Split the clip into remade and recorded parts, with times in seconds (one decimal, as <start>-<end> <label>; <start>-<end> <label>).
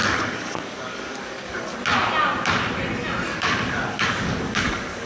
0.0-1.8 remade; 1.8-3.3 recorded; 3.3-5.1 remade